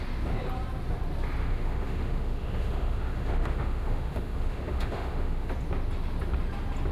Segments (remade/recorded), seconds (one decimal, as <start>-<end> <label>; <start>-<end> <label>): 0.0-1.4 recorded; 1.4-5.5 remade; 5.5-6.9 recorded